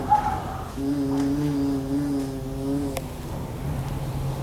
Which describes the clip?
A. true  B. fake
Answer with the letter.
A